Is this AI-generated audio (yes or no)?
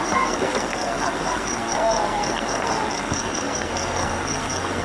yes